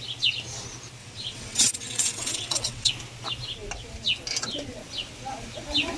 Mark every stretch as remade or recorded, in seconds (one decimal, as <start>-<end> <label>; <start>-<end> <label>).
0.0-1.0 recorded; 1.0-2.9 remade; 2.9-6.0 recorded